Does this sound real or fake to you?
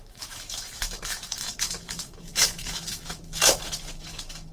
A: fake